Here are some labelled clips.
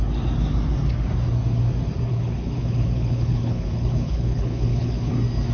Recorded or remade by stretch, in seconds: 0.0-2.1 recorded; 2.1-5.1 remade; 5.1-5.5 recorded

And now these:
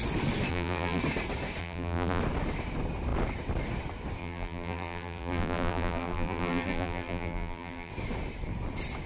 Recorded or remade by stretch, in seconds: 0.0-0.5 recorded; 0.5-1.0 remade; 1.0-1.6 recorded; 1.6-2.2 remade; 2.2-4.2 recorded; 4.2-7.9 remade; 7.9-9.1 recorded